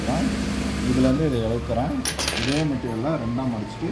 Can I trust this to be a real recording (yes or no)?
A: yes